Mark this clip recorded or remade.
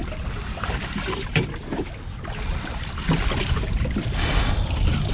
recorded